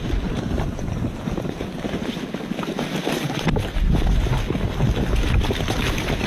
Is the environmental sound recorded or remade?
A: recorded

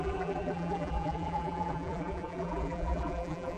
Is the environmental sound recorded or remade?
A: remade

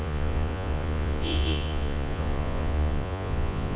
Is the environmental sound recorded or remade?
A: remade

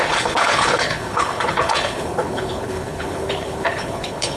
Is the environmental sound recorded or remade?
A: remade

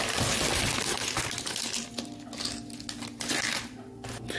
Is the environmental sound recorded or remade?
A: recorded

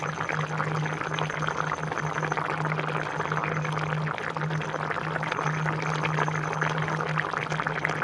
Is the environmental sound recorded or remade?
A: recorded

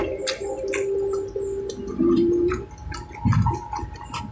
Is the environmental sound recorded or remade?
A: recorded